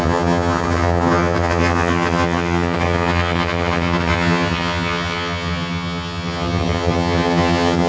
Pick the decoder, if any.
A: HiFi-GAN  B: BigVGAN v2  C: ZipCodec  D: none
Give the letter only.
A